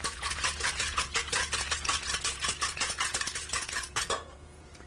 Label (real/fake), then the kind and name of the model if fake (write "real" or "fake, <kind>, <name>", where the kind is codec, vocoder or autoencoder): fake, vocoder, Vocos